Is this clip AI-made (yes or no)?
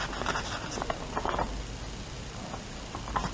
no